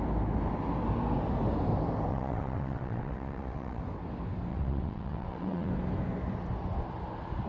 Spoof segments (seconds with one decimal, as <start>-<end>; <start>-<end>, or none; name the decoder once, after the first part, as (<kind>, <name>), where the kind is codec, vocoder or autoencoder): 2.1-3.8 (vocoder, WaveNeXt); 4.5-5.7

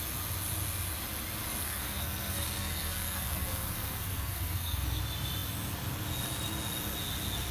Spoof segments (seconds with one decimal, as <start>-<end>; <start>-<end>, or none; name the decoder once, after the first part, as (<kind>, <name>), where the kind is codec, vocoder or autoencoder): 1.6-5.0 (codec, SNAC)